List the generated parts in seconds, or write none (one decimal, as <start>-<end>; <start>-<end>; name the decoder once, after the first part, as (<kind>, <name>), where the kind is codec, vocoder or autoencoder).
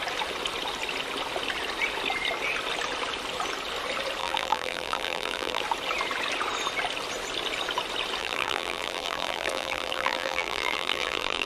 4.2-5.6 (vocoder, BigVGAN v2); 8.2-11.5